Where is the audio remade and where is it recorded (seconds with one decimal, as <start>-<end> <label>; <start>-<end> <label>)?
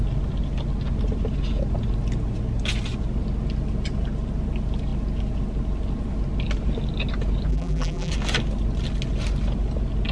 0.0-7.5 recorded; 7.5-8.1 remade; 8.1-10.1 recorded